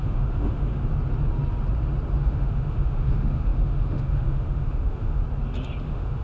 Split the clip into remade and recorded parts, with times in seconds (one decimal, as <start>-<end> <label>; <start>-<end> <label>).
0.0-0.8 remade; 0.8-2.2 recorded; 2.2-5.2 remade; 5.2-5.8 recorded; 5.8-6.2 remade